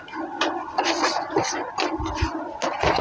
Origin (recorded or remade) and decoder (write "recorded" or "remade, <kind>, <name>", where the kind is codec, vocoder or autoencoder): recorded